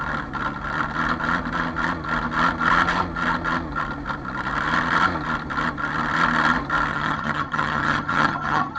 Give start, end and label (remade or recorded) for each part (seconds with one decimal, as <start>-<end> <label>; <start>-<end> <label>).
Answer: 0.0-6.9 recorded; 6.9-8.8 remade